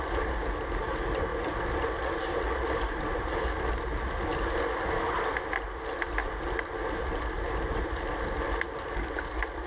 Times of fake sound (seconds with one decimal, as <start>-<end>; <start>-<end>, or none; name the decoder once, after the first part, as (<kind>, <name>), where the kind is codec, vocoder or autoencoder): none